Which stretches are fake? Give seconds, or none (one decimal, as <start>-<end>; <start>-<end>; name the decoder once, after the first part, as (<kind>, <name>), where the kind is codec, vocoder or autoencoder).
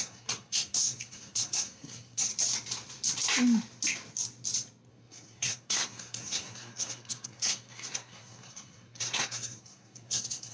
0.0-2.3 (codec, SNAC); 4.9-10.5